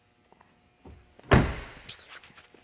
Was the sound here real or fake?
real